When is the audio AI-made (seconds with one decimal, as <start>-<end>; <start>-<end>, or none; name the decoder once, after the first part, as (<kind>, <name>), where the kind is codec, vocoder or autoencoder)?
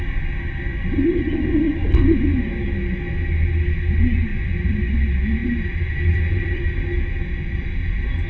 0.7-1.4 (vocoder, BigVGAN v2); 4.3-4.9; 5.4-6.7